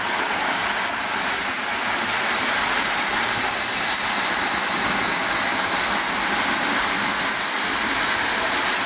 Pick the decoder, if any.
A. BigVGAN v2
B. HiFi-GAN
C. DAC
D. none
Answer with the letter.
D